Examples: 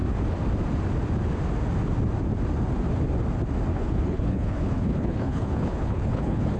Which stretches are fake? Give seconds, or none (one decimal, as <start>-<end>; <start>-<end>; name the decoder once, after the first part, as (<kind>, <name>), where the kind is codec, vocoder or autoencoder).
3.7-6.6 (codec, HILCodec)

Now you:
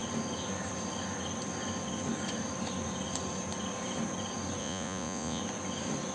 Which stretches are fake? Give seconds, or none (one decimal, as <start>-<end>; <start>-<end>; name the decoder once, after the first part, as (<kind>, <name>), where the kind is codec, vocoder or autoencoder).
4.6-5.4 (vocoder, Vocos)

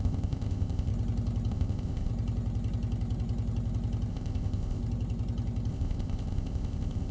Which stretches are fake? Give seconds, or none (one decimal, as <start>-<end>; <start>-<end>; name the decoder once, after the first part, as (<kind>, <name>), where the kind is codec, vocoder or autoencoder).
0.0-0.9 (codec, ZipCodec); 1.5-2.1; 4.1-4.8; 5.7-7.1

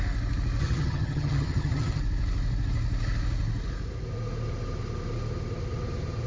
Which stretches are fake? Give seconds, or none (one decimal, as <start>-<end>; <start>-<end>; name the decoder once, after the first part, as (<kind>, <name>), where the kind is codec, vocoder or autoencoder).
0.6-2.0 (vocoder, HiFi-GAN)